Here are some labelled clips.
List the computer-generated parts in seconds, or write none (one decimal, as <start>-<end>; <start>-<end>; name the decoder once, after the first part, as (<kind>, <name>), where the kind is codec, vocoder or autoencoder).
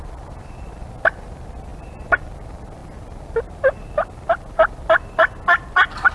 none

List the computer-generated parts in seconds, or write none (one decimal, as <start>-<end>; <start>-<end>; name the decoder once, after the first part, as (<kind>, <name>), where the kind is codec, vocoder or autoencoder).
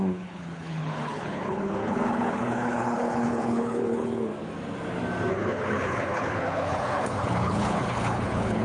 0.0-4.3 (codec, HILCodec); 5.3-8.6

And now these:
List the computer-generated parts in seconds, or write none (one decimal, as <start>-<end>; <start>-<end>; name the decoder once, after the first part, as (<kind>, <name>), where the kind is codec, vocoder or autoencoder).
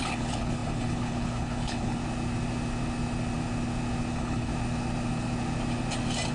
0.0-2.0 (codec, HILCodec); 4.1-4.5